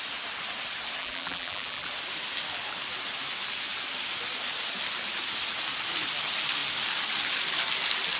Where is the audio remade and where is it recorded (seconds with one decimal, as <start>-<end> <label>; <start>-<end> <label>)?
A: 0.0-1.0 recorded; 1.0-1.9 remade; 1.9-8.2 recorded